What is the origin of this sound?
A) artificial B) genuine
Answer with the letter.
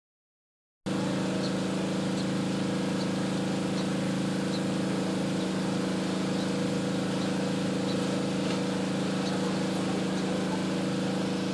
B